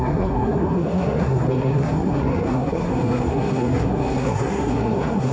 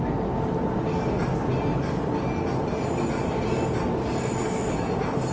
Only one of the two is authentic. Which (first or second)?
second